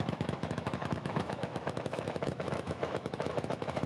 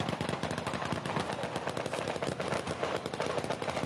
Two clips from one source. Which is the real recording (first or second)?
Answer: second